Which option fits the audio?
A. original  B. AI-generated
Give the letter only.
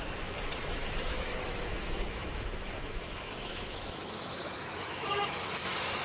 B